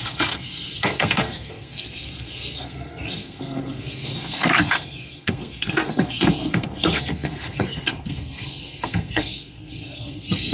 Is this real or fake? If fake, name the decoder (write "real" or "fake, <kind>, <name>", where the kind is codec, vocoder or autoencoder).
fake, codec, SNAC